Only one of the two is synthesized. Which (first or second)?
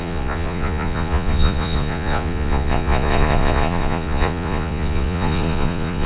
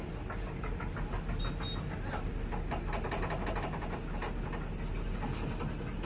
first